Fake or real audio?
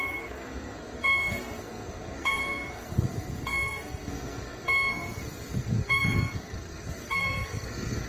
fake